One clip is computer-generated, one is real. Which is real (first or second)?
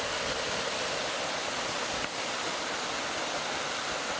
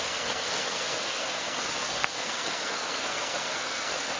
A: first